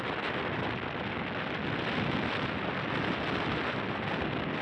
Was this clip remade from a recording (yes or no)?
no